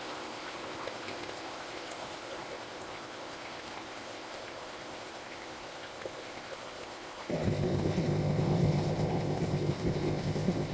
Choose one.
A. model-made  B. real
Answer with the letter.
A